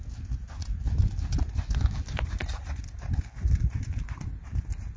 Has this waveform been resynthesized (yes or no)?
no